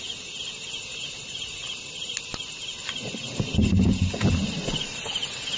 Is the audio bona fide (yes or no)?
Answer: yes